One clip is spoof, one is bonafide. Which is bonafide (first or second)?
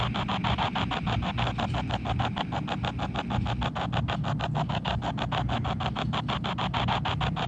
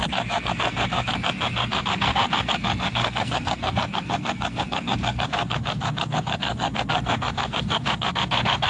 first